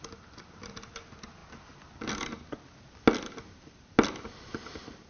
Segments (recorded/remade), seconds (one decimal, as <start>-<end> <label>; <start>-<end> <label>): 0.0-5.1 recorded